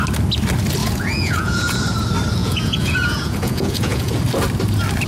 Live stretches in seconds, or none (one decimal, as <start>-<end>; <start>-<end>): 0.0-0.8; 1.8-2.4; 4.1-5.1